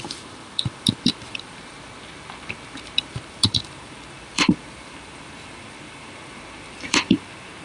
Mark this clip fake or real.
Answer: fake